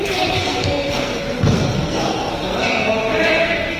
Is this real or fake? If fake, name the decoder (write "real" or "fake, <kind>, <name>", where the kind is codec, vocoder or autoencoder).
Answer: fake, codec, SNAC